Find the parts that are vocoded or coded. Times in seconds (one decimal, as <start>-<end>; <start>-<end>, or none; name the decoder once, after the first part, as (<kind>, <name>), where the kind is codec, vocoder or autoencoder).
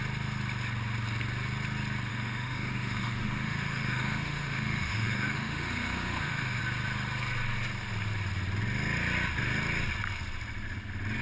2.1-6.6 (autoencoder, DAC-VAE)